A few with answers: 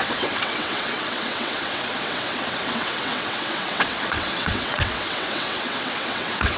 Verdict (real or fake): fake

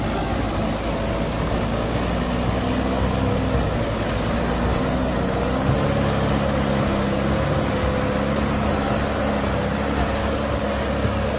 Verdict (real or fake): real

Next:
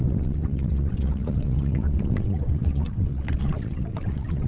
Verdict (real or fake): fake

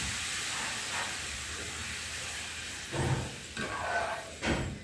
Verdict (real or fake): real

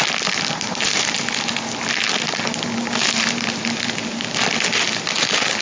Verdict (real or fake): real